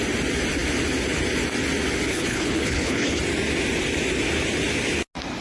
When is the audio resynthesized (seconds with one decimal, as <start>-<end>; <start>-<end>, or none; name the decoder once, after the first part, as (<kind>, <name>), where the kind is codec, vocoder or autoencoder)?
2.1-3.2 (codec, HILCodec)